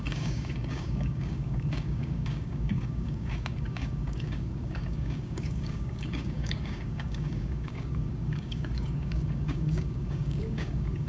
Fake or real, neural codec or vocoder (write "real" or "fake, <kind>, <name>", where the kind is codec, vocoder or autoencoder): fake, codec, DAC